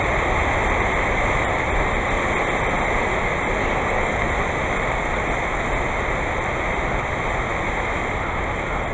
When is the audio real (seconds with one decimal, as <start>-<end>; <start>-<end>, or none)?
0.0-3.6; 4.1-8.9